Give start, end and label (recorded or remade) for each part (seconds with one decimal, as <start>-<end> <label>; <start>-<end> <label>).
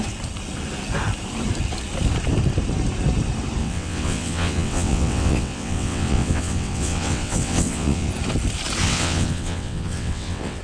0.0-3.6 recorded; 3.6-8.1 remade; 8.1-8.8 recorded; 8.8-10.6 remade